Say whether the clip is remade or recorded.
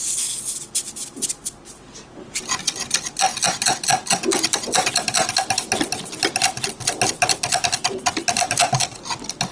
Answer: recorded